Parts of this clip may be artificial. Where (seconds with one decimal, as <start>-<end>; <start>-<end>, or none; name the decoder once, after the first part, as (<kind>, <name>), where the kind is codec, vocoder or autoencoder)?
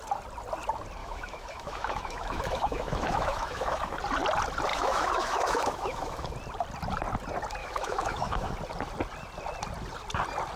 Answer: 1.0-4.0 (autoencoder, DAC-VAE); 4.7-6.3; 7.6-8.5